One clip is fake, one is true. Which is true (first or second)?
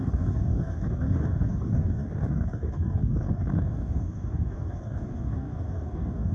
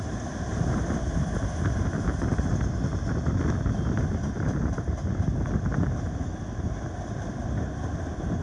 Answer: second